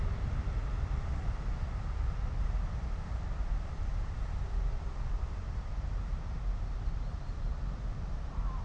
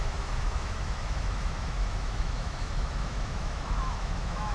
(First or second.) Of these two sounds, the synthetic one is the second